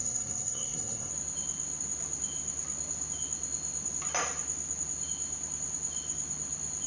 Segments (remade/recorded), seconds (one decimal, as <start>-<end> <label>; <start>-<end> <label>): 0.0-1.1 remade; 1.1-6.9 recorded